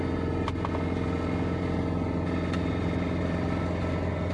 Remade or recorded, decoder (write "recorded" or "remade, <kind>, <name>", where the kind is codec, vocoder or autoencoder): recorded